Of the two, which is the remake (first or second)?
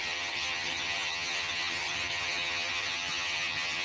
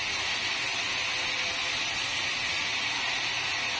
first